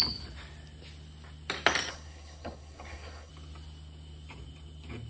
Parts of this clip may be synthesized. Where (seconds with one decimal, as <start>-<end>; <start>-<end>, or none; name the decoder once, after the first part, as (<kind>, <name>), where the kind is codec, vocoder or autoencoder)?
1.9-3.3 (codec, SNAC)